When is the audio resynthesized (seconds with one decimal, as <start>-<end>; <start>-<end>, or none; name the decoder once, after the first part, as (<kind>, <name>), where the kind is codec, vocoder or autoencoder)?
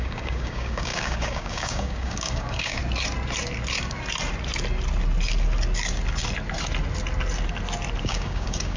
0.0-2.8 (codec, DAC); 8.0-8.8